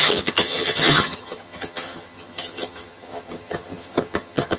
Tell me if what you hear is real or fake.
fake